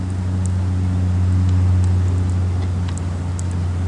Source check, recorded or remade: recorded